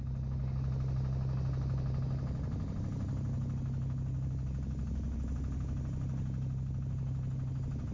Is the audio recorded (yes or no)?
yes